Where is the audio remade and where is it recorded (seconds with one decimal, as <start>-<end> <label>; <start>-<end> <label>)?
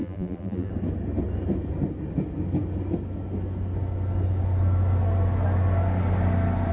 0.0-0.7 remade; 0.7-6.7 recorded